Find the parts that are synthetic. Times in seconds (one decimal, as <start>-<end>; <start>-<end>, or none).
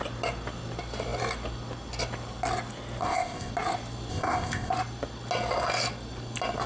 3.0-3.5; 4.1-4.7